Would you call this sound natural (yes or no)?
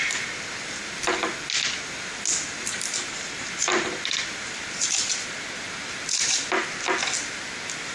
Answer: yes